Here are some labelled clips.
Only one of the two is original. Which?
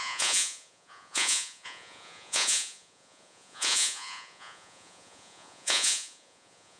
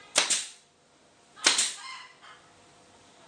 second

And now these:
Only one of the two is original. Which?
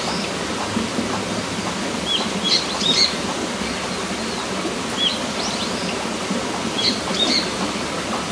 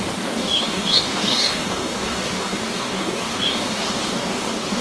first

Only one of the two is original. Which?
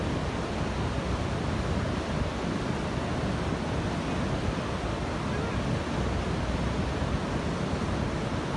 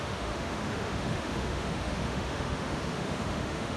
first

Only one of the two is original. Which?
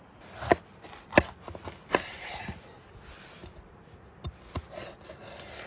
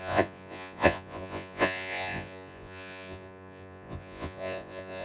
first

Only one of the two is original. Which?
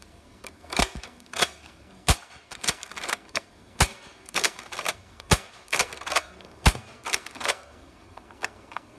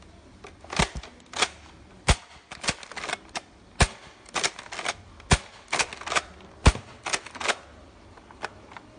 second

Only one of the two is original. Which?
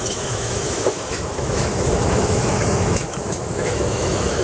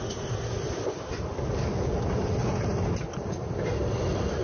second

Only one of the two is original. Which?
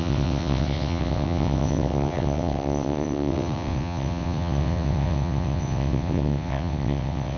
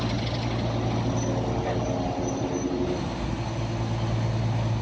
second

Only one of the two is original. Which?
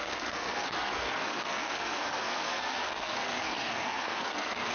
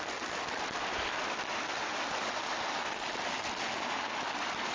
second